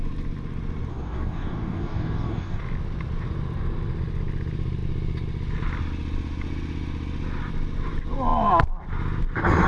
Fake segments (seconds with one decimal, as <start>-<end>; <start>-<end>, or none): 0.9-2.6